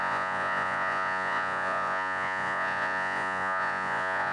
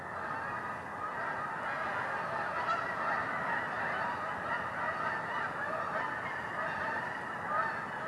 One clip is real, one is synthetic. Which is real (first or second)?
second